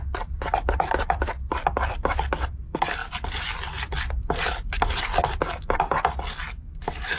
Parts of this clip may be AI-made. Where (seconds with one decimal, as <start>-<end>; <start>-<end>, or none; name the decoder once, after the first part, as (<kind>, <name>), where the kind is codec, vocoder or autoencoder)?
none